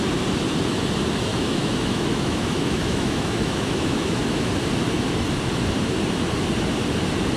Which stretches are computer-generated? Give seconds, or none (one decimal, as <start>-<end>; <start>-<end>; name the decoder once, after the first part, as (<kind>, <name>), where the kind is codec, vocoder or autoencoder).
1.3-4.5 (autoencoder, DAC-VAE)